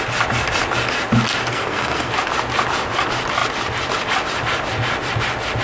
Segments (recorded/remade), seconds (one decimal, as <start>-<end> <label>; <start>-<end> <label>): 0.0-1.5 recorded; 1.5-2.1 remade; 2.1-5.6 recorded